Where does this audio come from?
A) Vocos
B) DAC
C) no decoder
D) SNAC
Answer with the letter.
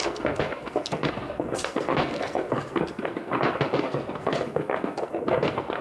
D